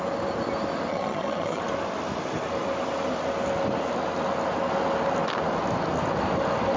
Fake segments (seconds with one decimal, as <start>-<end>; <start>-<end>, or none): 0.9-1.6